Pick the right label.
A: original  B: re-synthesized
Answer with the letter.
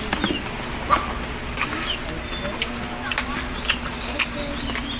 A